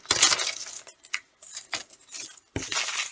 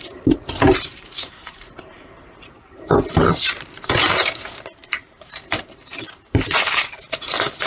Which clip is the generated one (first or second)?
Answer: second